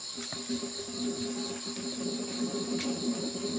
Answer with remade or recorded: recorded